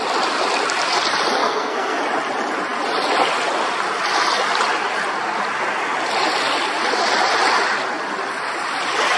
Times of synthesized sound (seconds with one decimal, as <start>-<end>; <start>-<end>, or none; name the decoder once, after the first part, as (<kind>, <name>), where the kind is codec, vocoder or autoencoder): 1.4-2.0 (codec, SNAC)